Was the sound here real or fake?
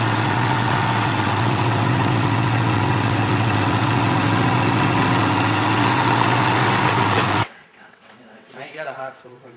fake